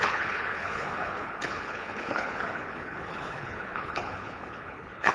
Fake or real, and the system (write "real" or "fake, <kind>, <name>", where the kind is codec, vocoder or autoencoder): fake, codec, HILCodec